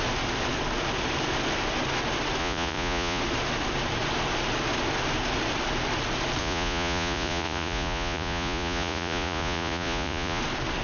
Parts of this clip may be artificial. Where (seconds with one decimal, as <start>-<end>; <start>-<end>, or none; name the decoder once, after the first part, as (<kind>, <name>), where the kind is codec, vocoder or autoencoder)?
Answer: 2.4-3.2 (vocoder, Vocos); 6.4-10.4